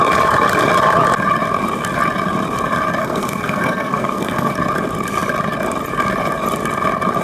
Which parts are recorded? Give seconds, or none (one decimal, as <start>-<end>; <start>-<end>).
0.0-3.0; 4.5-7.2